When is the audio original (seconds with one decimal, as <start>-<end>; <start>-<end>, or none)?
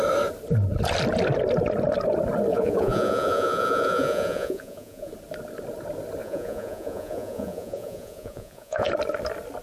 0.0-2.5; 5.1-6.2; 8.9-9.6